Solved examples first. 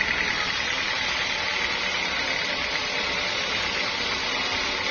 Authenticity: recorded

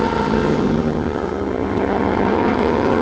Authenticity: remade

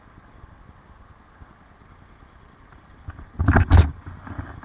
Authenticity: recorded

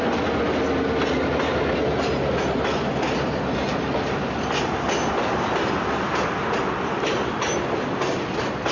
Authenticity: recorded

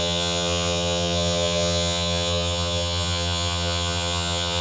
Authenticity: remade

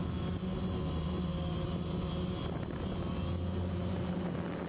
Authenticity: recorded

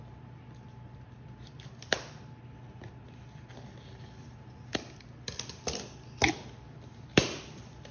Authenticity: recorded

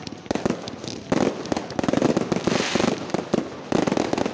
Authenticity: recorded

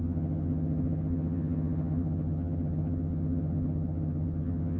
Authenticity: remade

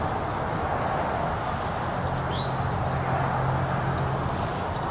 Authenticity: recorded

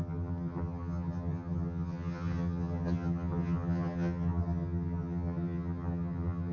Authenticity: remade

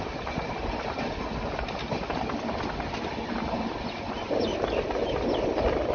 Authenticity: recorded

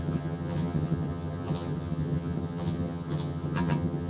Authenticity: remade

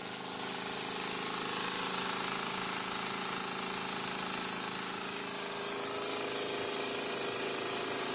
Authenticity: recorded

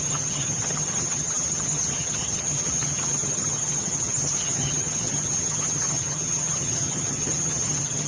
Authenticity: remade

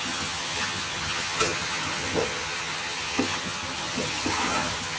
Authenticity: remade